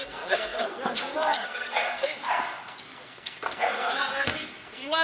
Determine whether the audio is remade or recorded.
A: remade